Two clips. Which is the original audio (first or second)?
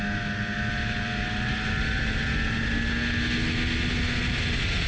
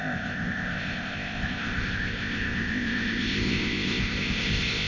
first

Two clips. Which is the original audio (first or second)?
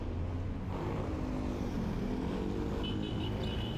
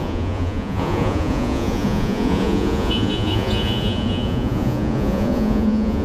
first